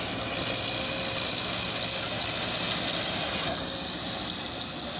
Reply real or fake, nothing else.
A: real